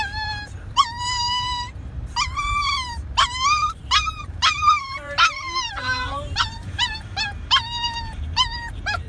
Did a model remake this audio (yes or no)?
yes